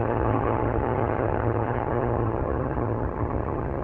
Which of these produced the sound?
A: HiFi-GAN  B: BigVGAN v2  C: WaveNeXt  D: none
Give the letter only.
A